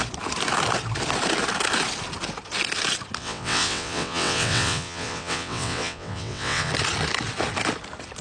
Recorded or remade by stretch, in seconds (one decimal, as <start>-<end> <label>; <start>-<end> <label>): 0.0-3.2 recorded; 3.2-6.7 remade; 6.7-8.2 recorded